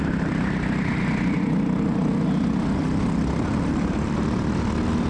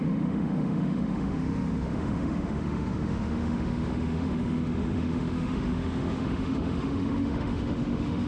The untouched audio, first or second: first